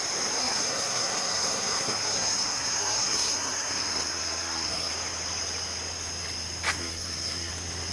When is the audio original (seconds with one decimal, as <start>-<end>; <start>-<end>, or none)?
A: 0.0-0.4; 4.9-6.8; 7.5-7.9